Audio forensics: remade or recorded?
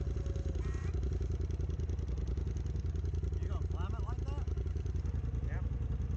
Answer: recorded